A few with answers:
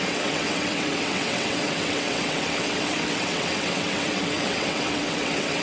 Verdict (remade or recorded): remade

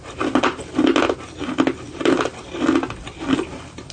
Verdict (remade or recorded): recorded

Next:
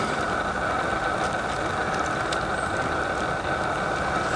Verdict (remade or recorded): recorded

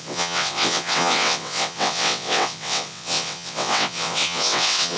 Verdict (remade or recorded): remade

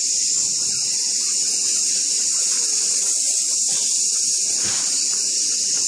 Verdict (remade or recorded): recorded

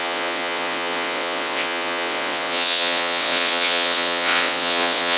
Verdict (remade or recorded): remade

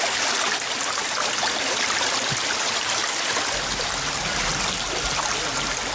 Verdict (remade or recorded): recorded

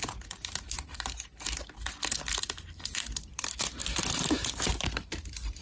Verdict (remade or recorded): recorded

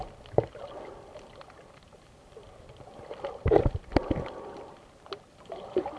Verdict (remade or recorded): recorded